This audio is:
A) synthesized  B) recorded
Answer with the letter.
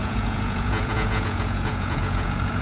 A